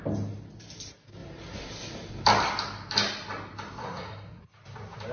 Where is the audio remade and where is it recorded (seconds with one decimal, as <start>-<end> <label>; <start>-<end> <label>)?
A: 0.0-3.8 recorded; 3.8-4.4 remade; 4.4-5.1 recorded